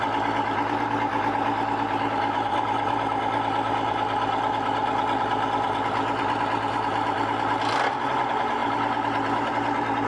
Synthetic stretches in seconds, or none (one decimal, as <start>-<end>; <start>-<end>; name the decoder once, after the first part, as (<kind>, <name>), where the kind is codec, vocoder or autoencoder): none